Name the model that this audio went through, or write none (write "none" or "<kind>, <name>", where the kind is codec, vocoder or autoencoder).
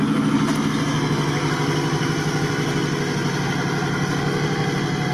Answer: none